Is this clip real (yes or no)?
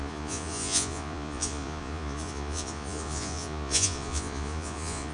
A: no